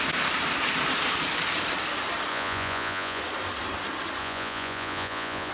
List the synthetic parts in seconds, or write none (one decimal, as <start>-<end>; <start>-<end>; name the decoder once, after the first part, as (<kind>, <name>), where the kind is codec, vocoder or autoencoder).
2.3-3.2 (vocoder, Vocos); 4.2-5.5